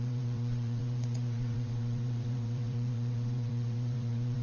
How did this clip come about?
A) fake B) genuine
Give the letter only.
A